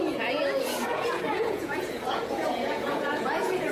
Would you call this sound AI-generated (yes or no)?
yes